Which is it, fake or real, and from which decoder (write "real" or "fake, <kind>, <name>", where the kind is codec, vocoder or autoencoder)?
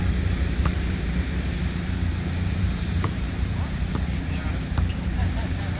fake, vocoder, BigVGAN v2